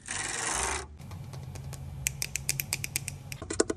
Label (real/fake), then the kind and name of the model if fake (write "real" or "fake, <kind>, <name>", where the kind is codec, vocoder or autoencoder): real